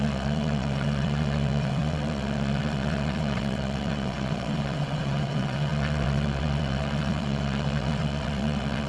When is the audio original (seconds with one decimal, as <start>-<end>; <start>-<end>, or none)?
none